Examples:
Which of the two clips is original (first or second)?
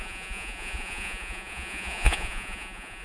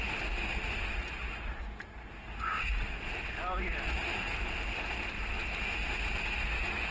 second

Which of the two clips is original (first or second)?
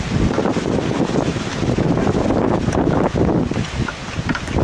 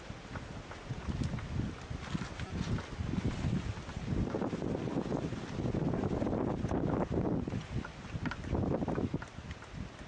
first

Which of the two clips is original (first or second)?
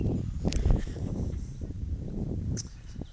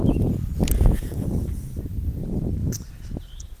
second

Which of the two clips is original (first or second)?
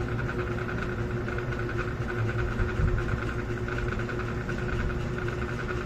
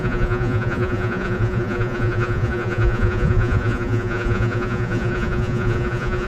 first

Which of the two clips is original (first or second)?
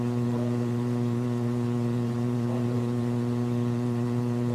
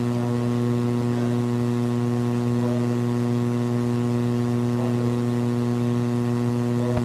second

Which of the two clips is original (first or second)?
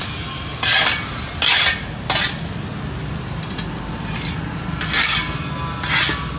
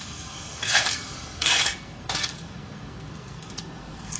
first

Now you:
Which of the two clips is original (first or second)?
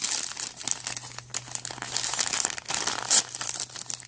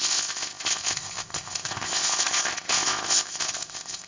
first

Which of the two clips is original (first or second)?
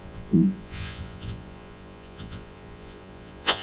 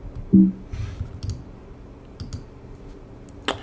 second